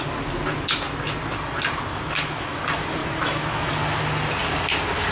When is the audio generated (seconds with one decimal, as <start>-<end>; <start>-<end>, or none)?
1.9-2.6; 3.0-3.7